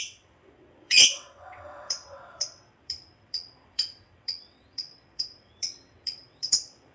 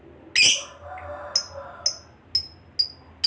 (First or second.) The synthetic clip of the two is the first